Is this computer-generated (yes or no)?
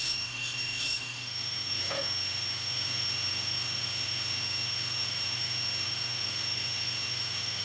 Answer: yes